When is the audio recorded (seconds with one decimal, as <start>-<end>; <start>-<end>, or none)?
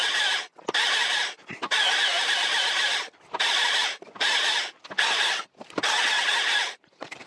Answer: 0.0-2.1; 5.2-6.0